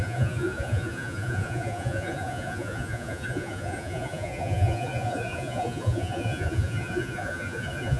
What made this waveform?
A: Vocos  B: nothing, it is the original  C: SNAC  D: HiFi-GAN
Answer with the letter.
A